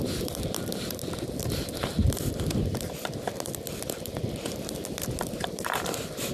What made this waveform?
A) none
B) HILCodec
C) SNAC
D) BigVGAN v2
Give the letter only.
A